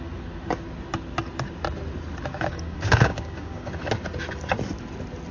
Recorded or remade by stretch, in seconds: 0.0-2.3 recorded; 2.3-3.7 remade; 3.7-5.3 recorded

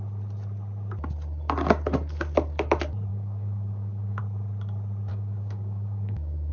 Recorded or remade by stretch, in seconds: 0.0-3.1 recorded; 3.1-4.2 remade; 4.2-5.1 recorded; 5.1-6.5 remade

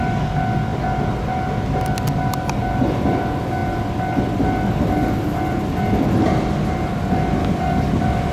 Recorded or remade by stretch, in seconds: 0.0-7.4 recorded; 7.4-7.9 remade; 7.9-8.3 recorded